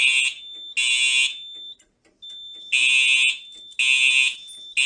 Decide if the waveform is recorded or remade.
recorded